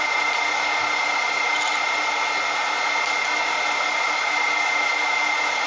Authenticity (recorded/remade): recorded